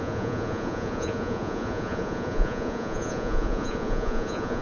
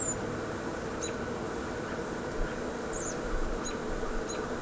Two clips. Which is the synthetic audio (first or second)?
first